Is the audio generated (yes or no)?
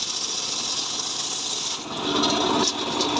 no